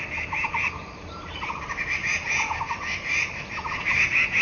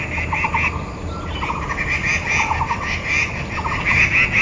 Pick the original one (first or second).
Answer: second